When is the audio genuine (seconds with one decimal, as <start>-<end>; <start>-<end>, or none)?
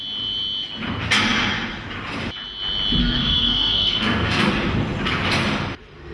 0.0-3.0; 4.5-6.1